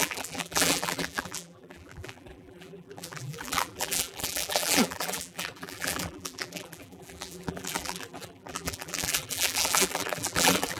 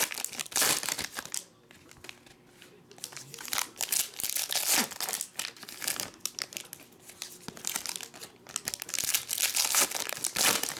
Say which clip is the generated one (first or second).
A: first